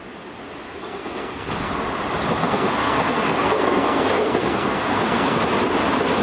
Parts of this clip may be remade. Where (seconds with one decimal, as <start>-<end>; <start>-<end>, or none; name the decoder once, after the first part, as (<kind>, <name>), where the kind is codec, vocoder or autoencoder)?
0.7-1.7 (codec, SNAC); 2.4-5.4